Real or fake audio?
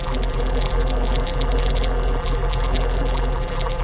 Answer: fake